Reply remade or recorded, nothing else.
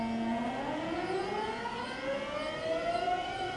recorded